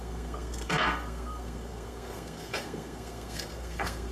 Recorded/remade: remade